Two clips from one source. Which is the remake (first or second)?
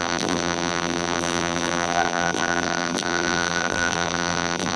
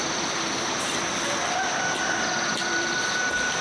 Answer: first